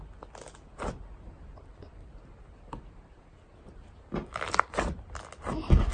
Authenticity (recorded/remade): recorded